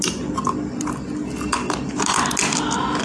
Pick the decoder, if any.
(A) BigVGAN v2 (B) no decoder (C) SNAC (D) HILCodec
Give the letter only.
B